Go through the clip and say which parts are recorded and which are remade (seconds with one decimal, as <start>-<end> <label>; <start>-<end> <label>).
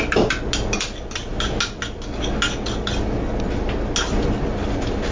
0.0-5.1 recorded